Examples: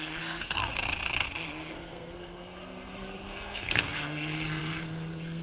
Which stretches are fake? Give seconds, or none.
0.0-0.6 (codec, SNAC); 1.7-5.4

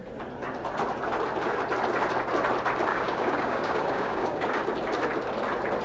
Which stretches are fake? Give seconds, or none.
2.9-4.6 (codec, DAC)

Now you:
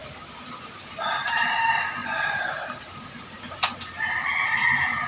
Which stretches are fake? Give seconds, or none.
0.0-1.1 (vocoder, BigVGAN v2); 2.0-5.1

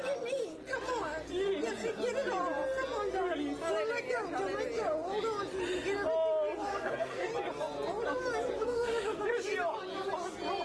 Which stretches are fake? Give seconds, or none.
6.7-7.3 (codec, SNAC); 8.6-9.3